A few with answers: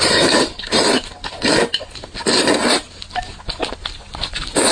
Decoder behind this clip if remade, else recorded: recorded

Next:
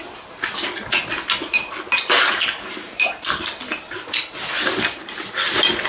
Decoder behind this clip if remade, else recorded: recorded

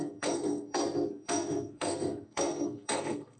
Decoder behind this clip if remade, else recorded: remade, codec, SNAC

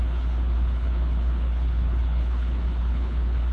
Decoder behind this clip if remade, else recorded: remade, codec, HILCodec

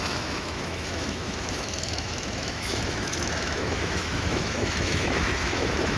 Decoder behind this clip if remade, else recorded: remade, autoencoder, DAC-VAE